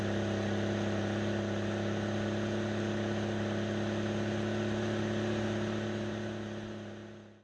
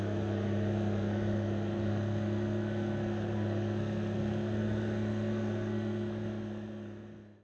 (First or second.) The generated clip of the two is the second